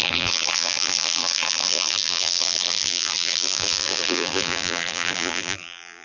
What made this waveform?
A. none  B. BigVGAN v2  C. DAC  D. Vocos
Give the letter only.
B